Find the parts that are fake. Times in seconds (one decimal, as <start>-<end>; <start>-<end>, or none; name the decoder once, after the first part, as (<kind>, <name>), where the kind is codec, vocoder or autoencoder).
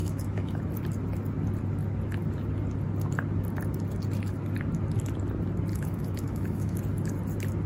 0.0-0.6 (autoencoder, DAC-VAE); 5.7-6.8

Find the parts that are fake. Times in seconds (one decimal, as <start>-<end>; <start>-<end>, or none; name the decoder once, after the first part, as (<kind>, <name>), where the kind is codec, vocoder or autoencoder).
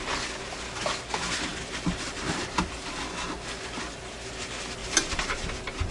4.8-5.4 (vocoder, BigVGAN v2)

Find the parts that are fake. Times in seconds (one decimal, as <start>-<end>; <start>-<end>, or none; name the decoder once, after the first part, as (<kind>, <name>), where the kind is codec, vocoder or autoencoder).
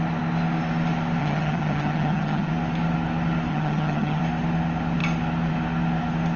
1.2-2.5 (vocoder, HiFi-GAN); 3.5-4.2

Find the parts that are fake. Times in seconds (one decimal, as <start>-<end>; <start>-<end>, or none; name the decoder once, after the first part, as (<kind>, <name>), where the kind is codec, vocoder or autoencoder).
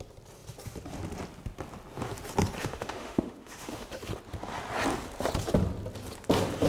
2.6-3.9 (autoencoder, DAC-VAE)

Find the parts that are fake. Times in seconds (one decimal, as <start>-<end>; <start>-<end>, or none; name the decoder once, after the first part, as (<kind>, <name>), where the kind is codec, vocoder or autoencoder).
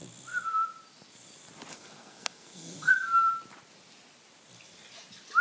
1.7-2.9 (codec, SNAC)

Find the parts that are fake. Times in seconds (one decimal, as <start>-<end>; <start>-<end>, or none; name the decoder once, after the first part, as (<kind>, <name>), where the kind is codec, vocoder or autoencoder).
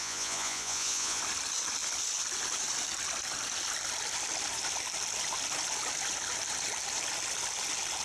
0.0-1.2 (vocoder, Vocos)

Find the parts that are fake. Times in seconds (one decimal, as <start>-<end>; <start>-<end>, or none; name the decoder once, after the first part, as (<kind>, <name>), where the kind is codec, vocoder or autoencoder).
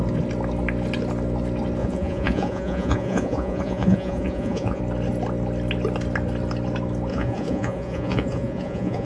1.8-4.8 (vocoder, Vocos); 7.1-9.1